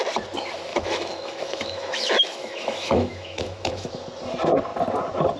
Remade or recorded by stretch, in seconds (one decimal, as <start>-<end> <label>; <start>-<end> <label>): 0.0-0.7 recorded; 0.7-3.9 remade; 3.9-5.4 recorded

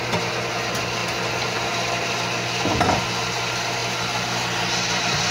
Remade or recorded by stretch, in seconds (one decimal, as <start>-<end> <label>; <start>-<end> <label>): 0.0-5.3 recorded

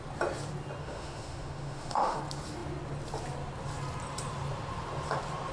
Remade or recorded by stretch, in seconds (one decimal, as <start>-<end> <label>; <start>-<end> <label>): 0.0-0.8 recorded; 0.8-2.2 remade; 2.2-5.5 recorded

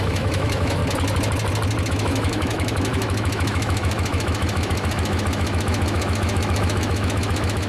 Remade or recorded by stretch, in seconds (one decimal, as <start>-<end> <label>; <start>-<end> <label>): 0.0-0.8 remade; 0.8-1.9 recorded; 1.9-7.7 remade

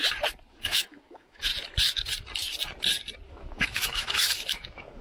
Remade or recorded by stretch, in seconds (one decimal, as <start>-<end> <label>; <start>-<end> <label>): 0.0-0.5 recorded; 0.5-1.5 remade; 1.5-3.3 recorded; 3.3-5.0 remade

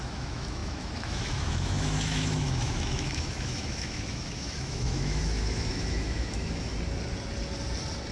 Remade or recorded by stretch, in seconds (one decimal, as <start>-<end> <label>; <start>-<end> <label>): 0.0-6.7 remade; 6.7-8.1 recorded